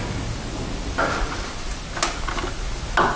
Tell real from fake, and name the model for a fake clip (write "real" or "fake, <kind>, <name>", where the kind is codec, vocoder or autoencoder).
real